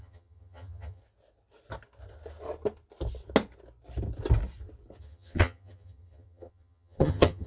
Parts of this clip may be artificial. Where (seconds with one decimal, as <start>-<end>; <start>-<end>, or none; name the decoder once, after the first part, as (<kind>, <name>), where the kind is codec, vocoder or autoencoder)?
0.0-1.0 (vocoder, HiFi-GAN); 5.0-7.5